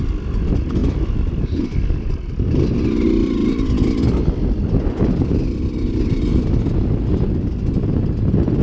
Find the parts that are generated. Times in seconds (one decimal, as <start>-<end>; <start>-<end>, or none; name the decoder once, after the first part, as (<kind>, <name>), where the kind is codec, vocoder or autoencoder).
none